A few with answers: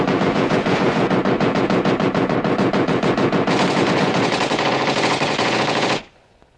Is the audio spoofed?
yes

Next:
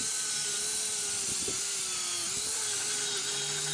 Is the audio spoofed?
no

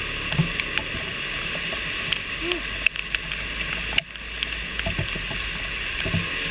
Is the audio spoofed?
no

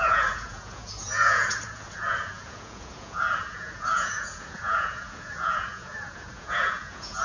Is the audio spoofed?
yes